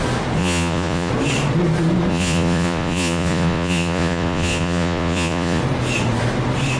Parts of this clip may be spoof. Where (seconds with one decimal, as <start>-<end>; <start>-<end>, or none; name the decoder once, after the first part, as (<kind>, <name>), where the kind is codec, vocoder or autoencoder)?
0.4-1.1 (vocoder, Vocos); 2.1-5.6